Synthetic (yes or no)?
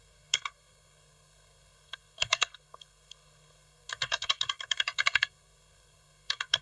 yes